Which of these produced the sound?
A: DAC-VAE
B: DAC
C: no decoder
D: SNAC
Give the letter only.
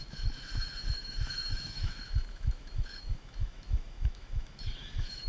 A